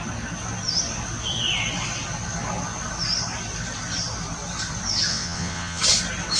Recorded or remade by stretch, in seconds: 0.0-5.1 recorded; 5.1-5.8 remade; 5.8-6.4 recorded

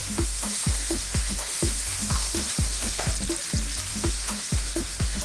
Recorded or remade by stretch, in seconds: 0.0-3.1 remade; 3.1-3.9 recorded; 3.9-5.2 remade

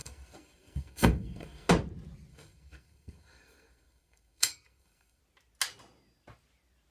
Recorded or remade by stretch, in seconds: 0.0-1.7 remade; 1.7-2.3 recorded; 2.3-5.2 remade; 5.2-6.9 recorded

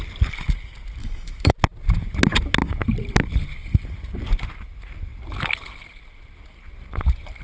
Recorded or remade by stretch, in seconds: 0.0-1.0 recorded; 1.0-1.5 remade; 1.5-7.4 recorded